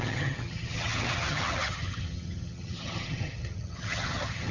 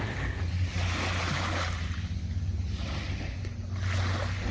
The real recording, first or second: second